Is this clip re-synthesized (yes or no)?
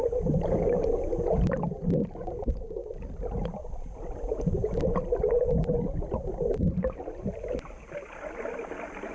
no